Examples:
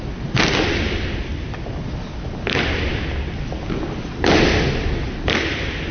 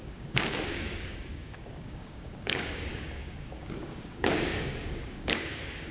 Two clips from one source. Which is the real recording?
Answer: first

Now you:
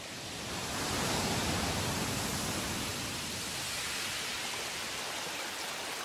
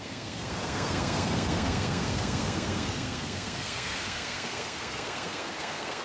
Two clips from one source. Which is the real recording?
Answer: first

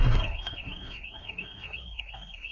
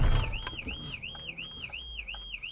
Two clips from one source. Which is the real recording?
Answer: second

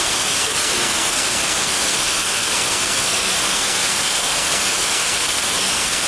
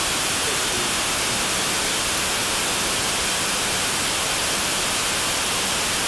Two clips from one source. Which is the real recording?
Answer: second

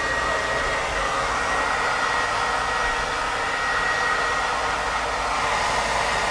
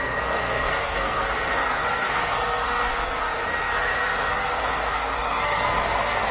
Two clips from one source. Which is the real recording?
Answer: first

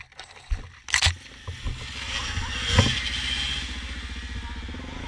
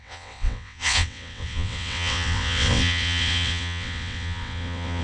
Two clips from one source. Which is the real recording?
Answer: first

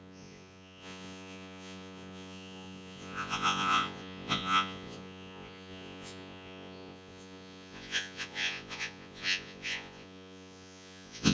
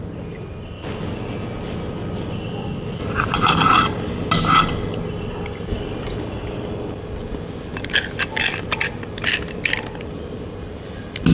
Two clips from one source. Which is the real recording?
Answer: second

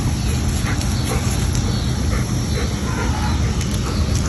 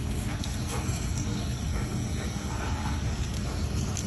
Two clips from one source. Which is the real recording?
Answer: first